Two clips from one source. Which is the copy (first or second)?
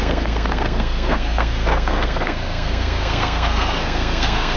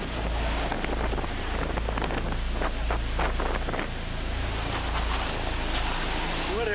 first